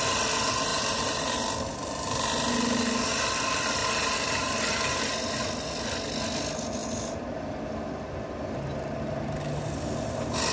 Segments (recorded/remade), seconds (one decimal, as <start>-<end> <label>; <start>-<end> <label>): 0.0-0.7 recorded; 0.7-1.2 remade; 1.2-3.8 recorded; 3.8-5.0 remade; 5.0-10.5 recorded